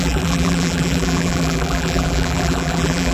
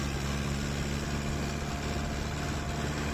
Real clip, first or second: second